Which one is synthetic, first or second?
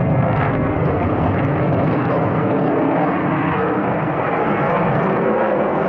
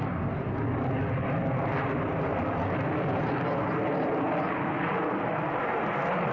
first